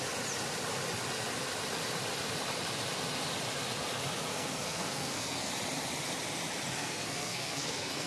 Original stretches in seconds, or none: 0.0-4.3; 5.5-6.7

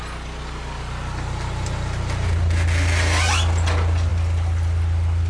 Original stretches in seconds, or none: 0.0-5.3

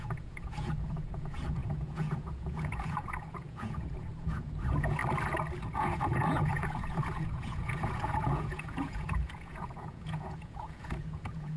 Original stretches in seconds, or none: 5.0-5.7

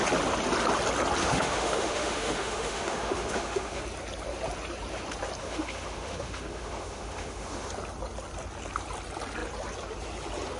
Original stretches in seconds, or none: 0.0-1.2; 3.8-5.4; 7.7-10.6